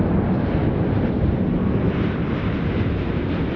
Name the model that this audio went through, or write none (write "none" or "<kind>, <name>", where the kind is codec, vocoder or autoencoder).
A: none